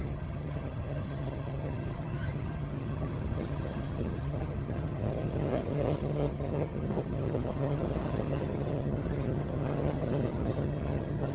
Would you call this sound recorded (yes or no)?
no